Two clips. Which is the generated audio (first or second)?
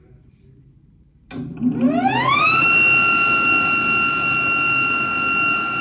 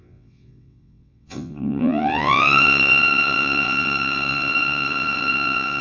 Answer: second